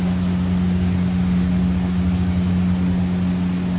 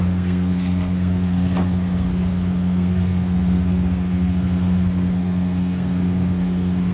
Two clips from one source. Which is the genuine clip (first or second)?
first